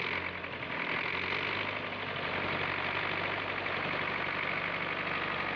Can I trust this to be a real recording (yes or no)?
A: yes